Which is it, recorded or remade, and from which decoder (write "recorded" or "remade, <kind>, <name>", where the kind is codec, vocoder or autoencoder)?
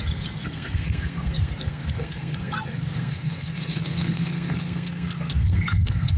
remade, codec, SNAC